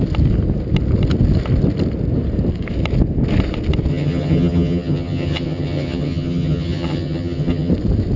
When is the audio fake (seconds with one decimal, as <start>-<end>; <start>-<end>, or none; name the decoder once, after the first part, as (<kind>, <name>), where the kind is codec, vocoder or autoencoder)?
3.9-7.7 (vocoder, HiFi-GAN)